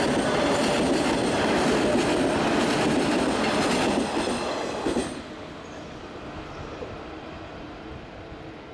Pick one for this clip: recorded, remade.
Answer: recorded